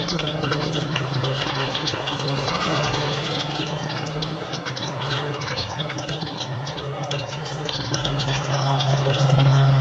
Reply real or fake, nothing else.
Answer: fake